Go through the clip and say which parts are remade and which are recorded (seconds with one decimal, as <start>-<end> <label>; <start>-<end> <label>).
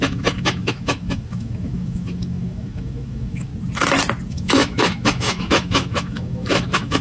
0.0-3.5 remade; 3.5-4.3 recorded; 4.3-7.0 remade